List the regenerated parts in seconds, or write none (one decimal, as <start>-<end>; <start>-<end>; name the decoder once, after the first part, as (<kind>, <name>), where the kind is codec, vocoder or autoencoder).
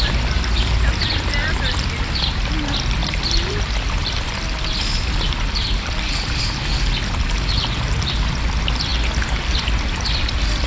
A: 1.4-2.2 (vocoder, BigVGAN v2); 3.0-6.4